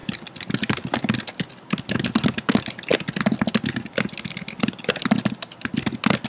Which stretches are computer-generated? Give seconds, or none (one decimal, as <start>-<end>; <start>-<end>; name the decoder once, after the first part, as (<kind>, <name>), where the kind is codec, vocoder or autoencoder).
none